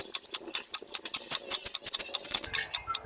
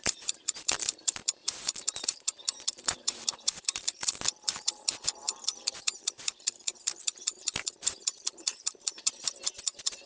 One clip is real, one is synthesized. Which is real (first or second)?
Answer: first